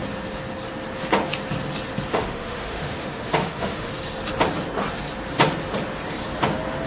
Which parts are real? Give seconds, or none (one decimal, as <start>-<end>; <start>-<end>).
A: 0.0-2.1; 3.9-6.9